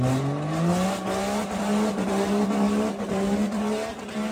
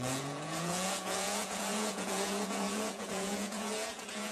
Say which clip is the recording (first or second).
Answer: first